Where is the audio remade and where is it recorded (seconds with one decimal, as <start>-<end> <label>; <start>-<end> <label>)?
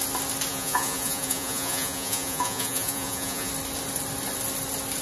0.0-0.5 recorded; 0.5-3.5 remade; 3.5-5.0 recorded